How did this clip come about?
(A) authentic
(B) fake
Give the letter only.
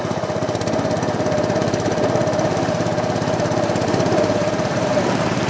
B